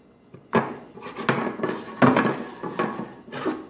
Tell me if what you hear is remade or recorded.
recorded